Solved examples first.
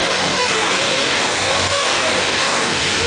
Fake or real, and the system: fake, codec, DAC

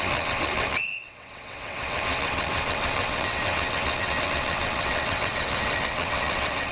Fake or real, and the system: fake, vocoder, WaveNeXt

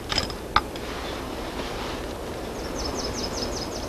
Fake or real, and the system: real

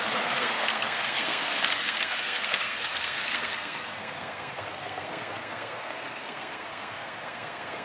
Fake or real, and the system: fake, codec, SNAC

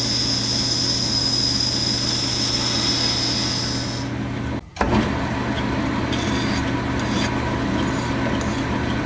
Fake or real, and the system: real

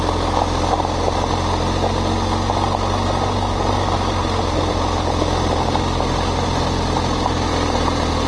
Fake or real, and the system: real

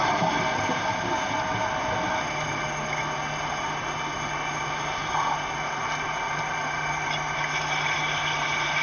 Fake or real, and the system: real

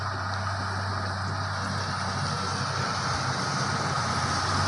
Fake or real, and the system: real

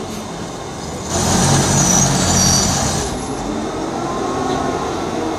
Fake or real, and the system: real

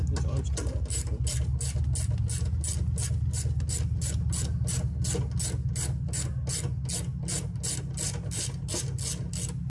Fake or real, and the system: real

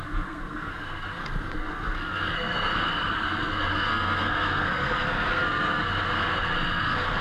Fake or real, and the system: fake, codec, SNAC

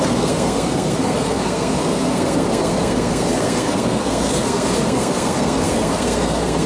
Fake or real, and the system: fake, codec, SNAC